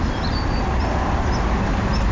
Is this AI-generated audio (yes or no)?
no